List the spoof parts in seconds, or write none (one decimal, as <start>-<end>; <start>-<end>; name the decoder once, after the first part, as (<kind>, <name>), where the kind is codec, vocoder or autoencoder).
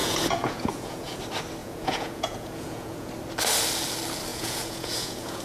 0.0-1.2 (vocoder, Vocos); 1.6-3.1; 4.3-5.4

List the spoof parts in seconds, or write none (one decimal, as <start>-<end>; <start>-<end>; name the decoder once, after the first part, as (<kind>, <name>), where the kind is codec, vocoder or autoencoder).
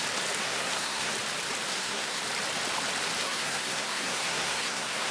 0.4-1.1 (codec, SNAC); 1.7-2.2; 3.2-5.1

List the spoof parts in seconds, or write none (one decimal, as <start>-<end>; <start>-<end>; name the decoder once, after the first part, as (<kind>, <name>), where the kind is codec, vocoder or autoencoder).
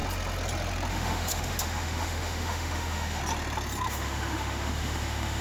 0.9-3.2 (autoencoder, DAC-VAE); 3.9-5.4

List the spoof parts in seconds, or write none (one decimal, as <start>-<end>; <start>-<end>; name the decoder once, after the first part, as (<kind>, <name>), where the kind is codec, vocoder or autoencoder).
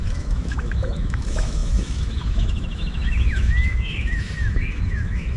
0.0-5.4 (autoencoder, DAC-VAE)